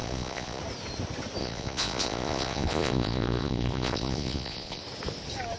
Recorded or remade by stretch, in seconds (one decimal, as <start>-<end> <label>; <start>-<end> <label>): 0.0-0.6 remade; 0.6-1.4 recorded; 1.4-4.8 remade; 4.8-5.6 recorded